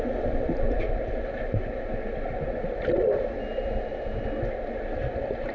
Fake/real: real